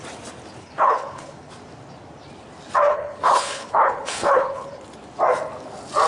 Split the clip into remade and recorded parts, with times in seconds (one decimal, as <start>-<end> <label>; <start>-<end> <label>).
0.0-0.6 recorded; 0.6-1.5 remade; 1.5-2.8 recorded; 2.8-4.8 remade; 4.8-6.1 recorded